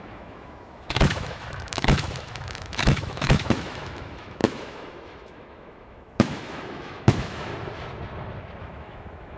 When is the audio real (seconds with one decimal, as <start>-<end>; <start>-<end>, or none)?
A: 7.5-8.6